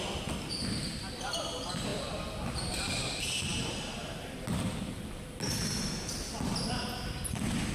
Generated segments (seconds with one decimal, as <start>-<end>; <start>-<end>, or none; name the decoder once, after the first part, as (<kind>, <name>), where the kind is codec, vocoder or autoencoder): 1.9-3.6 (vocoder, BigVGAN v2)